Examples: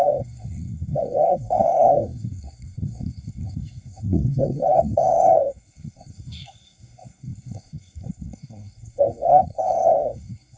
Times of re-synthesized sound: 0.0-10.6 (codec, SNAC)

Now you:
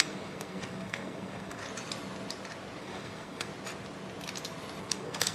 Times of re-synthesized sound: 0.0-1.6 (codec, SNAC); 2.8-3.5; 4.8-5.3